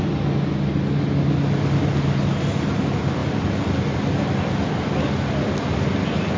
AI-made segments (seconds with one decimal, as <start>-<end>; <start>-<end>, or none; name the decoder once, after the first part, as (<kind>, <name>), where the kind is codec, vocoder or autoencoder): none